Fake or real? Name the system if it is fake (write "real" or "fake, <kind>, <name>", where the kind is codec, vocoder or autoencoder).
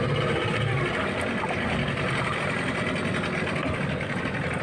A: real